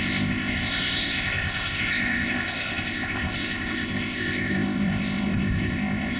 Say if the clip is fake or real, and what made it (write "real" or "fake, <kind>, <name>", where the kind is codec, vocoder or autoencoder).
fake, codec, ZipCodec